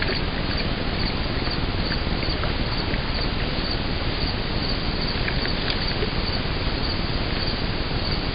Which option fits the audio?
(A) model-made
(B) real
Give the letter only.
B